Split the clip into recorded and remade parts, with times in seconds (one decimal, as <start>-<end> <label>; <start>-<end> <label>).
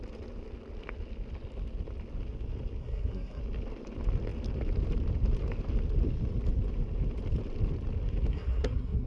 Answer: 0.0-2.8 recorded; 2.8-3.4 remade; 3.4-8.3 recorded; 8.3-9.1 remade